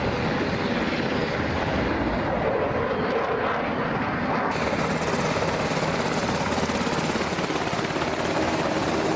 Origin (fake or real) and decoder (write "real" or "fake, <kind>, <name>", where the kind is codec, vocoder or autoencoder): real